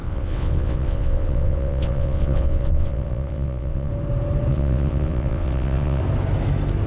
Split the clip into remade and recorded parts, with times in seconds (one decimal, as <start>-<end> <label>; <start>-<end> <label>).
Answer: 0.0-3.9 remade; 3.9-4.5 recorded; 4.5-6.0 remade; 6.0-6.9 recorded